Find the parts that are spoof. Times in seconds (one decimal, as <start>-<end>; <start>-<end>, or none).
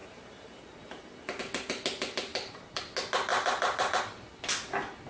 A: 0.0-1.4; 2.3-2.8; 3.3-4.0